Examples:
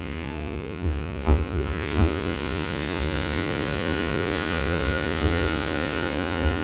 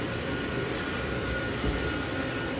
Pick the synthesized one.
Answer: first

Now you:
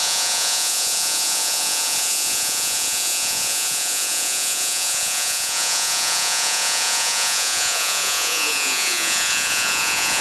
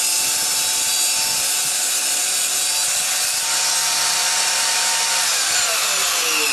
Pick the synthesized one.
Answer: first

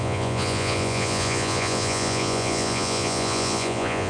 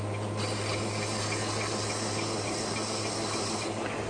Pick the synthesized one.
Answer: first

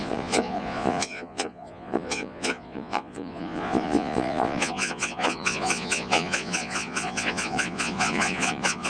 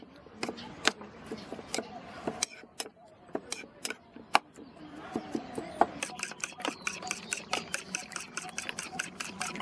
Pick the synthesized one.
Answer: first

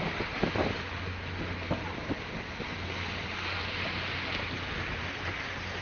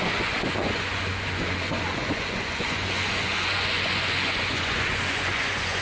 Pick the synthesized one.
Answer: second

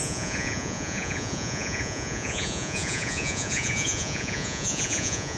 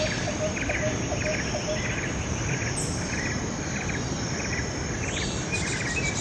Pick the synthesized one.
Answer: first